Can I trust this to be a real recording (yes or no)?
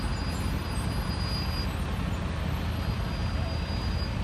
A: yes